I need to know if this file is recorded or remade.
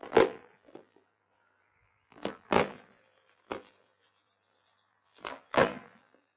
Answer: remade